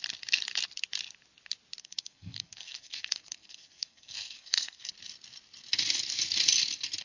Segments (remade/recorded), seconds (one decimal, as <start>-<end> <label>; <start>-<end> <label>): 0.0-1.8 recorded; 1.8-4.9 remade; 4.9-7.0 recorded